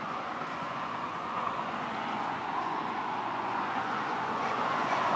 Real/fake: fake